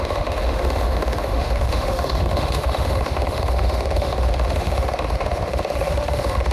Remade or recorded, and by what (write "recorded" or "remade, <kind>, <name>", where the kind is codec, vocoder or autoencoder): remade, autoencoder, DAC-VAE